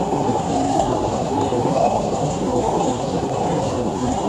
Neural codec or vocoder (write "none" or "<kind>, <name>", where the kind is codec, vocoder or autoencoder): codec, SNAC